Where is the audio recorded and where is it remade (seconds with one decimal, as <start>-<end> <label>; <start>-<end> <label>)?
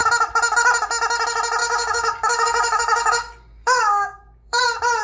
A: 0.0-1.6 recorded; 1.6-4.6 remade; 4.6-5.0 recorded